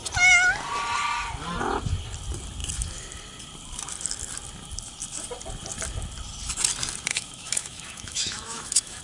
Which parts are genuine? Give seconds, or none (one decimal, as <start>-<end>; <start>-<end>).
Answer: 0.0-7.1